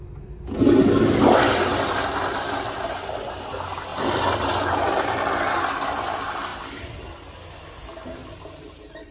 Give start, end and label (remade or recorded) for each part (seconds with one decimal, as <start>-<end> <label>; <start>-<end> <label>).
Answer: 0.0-1.7 recorded; 1.7-2.8 remade; 2.8-3.9 recorded; 3.9-5.1 remade; 5.1-9.1 recorded